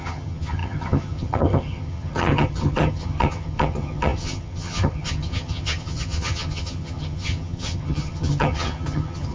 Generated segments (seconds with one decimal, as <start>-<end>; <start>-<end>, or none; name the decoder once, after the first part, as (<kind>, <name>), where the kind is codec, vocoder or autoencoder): 0.0-9.3 (vocoder, HiFi-GAN)